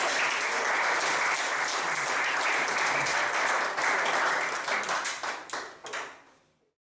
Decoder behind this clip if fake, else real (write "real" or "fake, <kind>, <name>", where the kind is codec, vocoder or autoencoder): real